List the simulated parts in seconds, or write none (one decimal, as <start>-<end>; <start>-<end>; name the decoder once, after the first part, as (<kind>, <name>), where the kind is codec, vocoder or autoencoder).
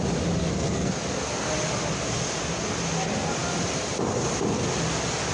0.4-0.9 (codec, SNAC)